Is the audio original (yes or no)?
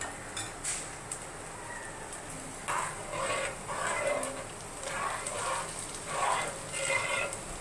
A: yes